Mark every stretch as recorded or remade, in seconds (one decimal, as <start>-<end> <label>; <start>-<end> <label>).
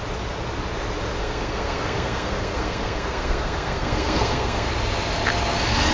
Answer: 0.0-1.2 recorded; 1.2-4.7 remade; 4.7-5.9 recorded